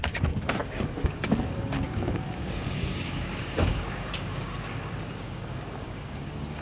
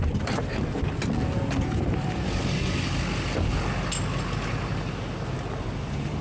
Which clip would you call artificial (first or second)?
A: first